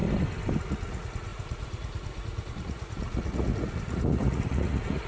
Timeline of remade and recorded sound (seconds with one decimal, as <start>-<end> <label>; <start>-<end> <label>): 0.0-0.6 recorded; 0.6-5.1 remade

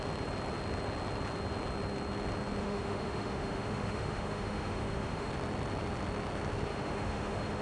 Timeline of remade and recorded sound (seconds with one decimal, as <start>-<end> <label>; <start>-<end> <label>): 0.0-2.6 recorded; 2.6-5.3 remade; 5.3-6.7 recorded; 6.7-7.6 remade

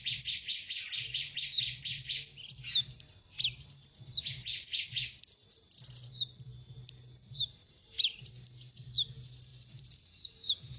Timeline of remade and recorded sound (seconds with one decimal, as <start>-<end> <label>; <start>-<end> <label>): 0.0-10.8 recorded

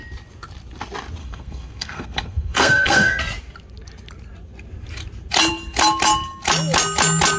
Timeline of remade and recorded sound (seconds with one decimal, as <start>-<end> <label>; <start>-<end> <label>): 0.0-1.2 recorded; 1.2-3.2 remade; 3.2-7.4 recorded

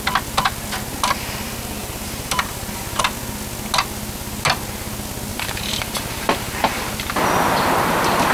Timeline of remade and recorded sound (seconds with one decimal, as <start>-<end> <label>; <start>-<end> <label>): 0.0-1.8 recorded; 1.8-3.0 remade; 3.0-5.3 recorded; 5.3-6.8 remade; 6.8-8.3 recorded

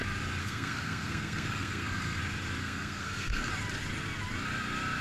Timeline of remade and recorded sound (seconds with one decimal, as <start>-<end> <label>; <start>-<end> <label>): 0.0-0.4 recorded; 0.4-2.2 remade; 2.2-2.6 recorded; 2.6-3.5 remade; 3.5-5.0 recorded

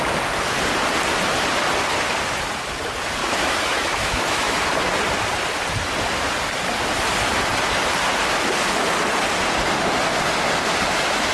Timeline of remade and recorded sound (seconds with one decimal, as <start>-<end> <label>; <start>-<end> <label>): 0.0-3.2 recorded; 3.2-4.8 remade; 4.8-11.3 recorded